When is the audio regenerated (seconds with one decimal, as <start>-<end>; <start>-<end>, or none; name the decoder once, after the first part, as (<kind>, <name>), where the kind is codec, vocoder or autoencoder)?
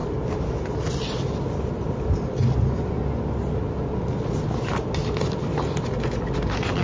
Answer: none